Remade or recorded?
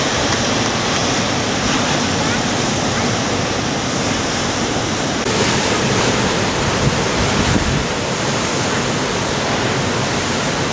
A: recorded